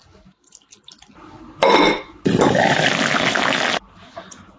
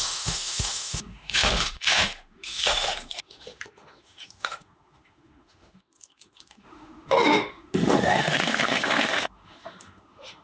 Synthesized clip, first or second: second